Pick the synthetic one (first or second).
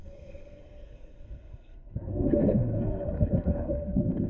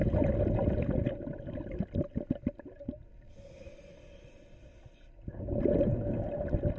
first